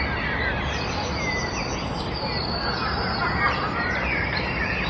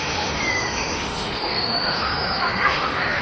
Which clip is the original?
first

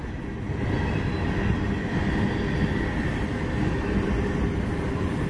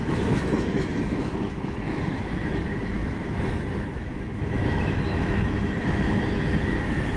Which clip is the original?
first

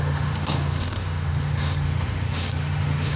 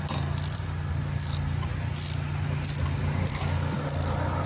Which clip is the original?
second